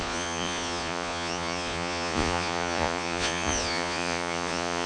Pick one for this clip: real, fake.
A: fake